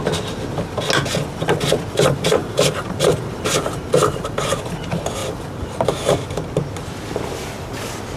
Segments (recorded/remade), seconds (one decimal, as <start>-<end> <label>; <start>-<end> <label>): 0.0-2.4 recorded; 2.4-4.6 remade; 4.6-5.2 recorded; 5.2-6.5 remade; 6.5-8.2 recorded